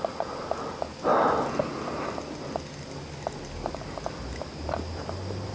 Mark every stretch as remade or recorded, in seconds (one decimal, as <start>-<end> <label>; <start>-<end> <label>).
0.0-5.5 recorded